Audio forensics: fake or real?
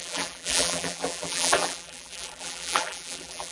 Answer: fake